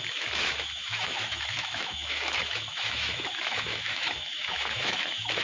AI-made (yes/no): yes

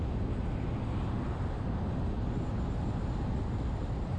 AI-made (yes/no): no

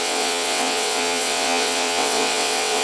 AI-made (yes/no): yes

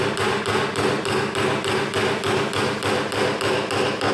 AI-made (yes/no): no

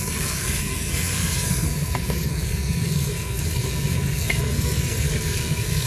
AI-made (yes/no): yes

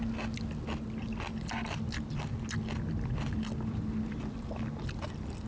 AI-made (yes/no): no